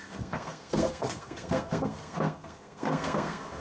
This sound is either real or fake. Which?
fake